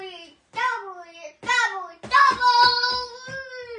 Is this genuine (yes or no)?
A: yes